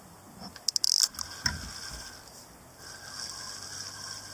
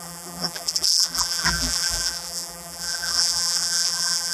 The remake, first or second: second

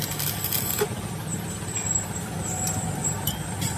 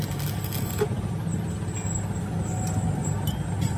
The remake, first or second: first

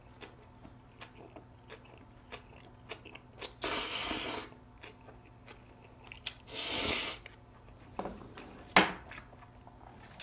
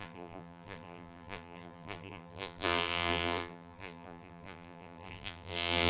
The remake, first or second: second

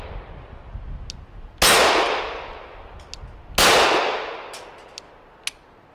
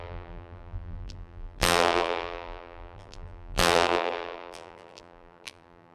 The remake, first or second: second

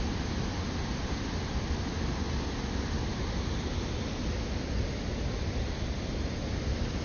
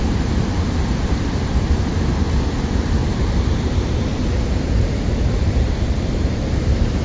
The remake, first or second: second